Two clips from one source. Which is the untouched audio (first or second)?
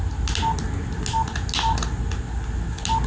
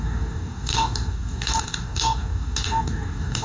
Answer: first